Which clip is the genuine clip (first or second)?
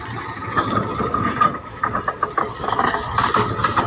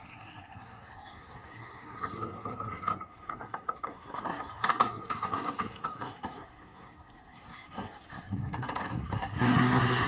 first